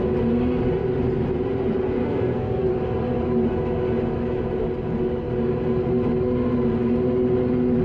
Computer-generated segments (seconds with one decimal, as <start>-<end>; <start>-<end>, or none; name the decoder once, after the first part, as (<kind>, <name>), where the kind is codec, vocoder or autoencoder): 2.0-2.7 (codec, SNAC)